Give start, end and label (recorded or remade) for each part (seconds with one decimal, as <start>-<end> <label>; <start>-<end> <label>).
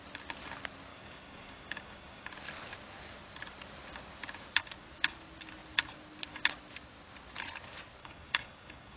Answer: 0.0-0.9 recorded; 0.9-2.3 remade; 2.3-8.0 recorded; 8.0-9.0 remade